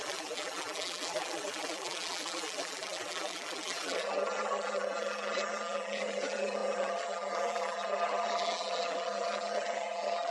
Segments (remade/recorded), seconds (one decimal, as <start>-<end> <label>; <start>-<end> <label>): 0.0-10.3 remade